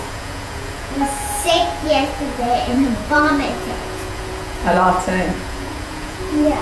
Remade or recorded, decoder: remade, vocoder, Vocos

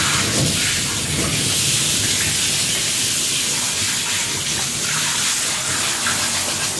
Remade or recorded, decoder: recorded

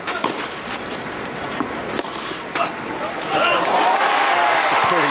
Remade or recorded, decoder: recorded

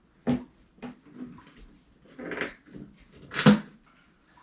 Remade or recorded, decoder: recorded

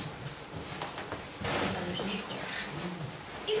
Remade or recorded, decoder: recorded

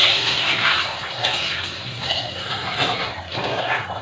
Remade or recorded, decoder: remade, codec, SNAC